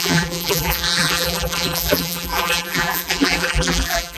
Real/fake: fake